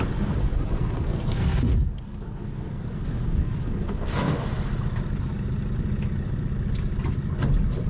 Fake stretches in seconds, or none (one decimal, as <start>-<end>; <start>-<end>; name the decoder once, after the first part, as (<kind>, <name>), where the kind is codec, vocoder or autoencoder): 0.4-4.3 (codec, SNAC)

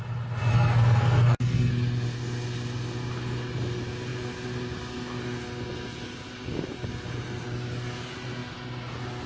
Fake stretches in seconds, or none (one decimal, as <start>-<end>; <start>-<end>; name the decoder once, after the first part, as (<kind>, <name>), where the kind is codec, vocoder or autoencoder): 0.5-1.7 (codec, SNAC)

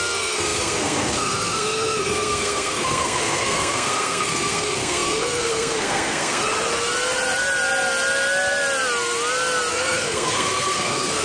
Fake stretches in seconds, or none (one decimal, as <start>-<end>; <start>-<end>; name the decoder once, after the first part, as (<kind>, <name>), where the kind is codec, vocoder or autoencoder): 0.0-6.4 (codec, SNAC); 9.7-11.2

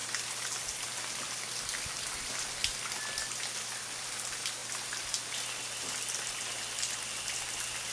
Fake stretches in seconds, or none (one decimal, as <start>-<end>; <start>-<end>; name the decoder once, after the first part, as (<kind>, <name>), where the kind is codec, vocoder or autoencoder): none

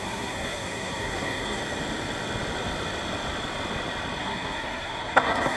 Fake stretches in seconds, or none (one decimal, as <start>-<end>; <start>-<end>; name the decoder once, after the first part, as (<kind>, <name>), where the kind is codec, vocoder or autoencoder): 0.0-1.6 (codec, SNAC); 4.2-5.6